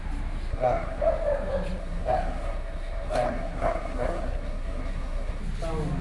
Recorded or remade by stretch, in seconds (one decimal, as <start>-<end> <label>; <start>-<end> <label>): 0.0-0.5 recorded; 0.5-1.0 remade; 1.0-1.8 recorded; 1.8-5.4 remade; 5.4-6.0 recorded